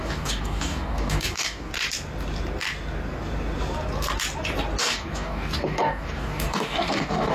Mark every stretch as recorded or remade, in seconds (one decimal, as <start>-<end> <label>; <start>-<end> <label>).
0.0-1.7 remade; 1.7-4.8 recorded; 4.8-7.3 remade